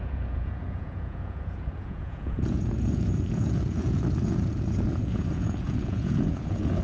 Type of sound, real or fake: fake